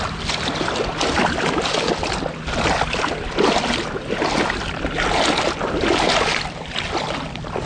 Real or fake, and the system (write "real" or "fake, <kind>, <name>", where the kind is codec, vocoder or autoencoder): real